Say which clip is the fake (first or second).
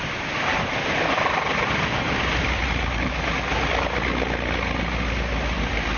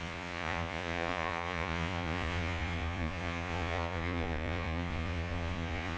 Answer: second